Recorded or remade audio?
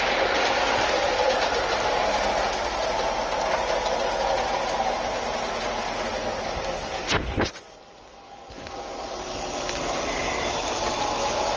recorded